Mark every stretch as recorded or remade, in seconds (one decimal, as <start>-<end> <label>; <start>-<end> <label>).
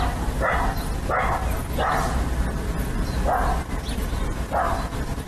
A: 0.0-5.3 recorded